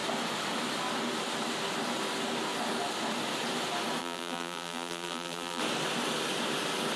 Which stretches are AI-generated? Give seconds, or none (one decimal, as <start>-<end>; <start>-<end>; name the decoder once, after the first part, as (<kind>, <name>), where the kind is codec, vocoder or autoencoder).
4.0-5.6 (vocoder, BigVGAN v2)